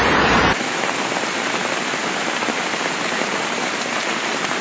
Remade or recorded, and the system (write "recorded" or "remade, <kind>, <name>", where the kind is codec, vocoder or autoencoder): remade, vocoder, BigVGAN v2